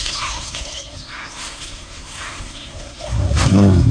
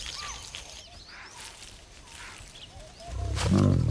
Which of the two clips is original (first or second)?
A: second